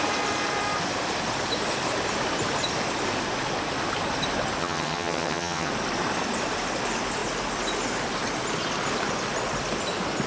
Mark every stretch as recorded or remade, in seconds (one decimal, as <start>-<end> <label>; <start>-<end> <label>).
0.0-4.6 recorded; 4.6-5.7 remade; 5.7-10.3 recorded